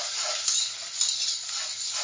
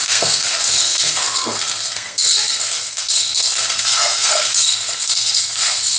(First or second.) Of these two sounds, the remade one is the second